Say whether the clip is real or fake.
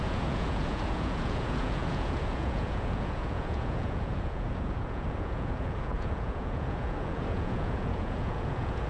fake